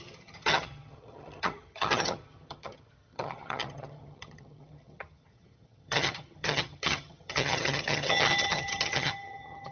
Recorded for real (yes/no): no